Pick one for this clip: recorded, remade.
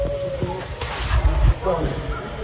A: recorded